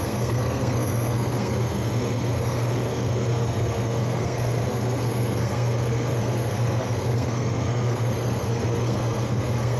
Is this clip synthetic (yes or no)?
yes